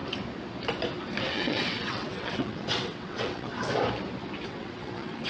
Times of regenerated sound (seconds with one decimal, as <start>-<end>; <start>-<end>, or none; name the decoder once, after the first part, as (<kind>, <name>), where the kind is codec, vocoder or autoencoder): 1.2-3.5 (vocoder, WaveNeXt); 4.5-5.3